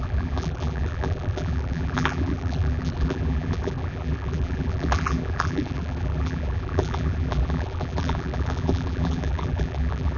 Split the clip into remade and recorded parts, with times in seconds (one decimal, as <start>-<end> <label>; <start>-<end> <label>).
0.0-10.2 remade